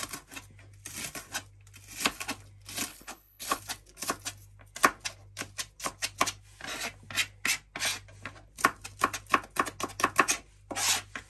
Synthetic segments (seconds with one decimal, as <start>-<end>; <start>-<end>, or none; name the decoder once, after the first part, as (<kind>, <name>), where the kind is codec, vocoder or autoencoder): 2.9-3.6 (codec, HILCodec)